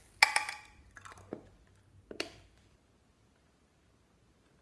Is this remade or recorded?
recorded